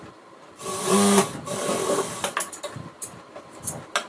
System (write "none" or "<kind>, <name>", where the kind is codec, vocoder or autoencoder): none